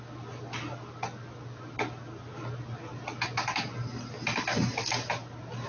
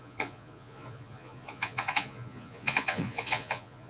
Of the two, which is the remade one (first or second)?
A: second